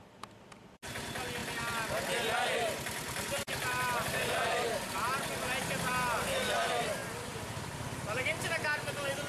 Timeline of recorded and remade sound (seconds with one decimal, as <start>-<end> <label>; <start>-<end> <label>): 0.0-9.3 recorded